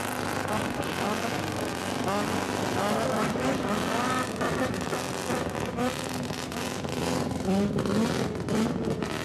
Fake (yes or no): no